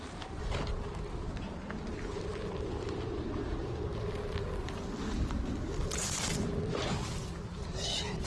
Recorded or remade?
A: recorded